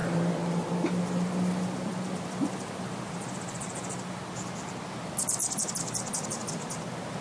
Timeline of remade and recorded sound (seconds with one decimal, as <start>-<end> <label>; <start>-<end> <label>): 0.0-4.3 remade; 4.3-5.4 recorded; 5.4-7.2 remade